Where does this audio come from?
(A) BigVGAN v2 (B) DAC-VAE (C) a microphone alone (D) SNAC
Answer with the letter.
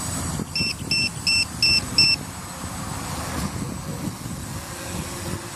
C